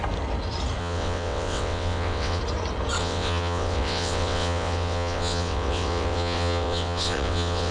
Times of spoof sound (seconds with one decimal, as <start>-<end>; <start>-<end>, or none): 0.8-2.4; 3.0-7.7